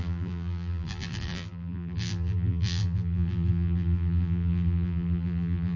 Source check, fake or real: fake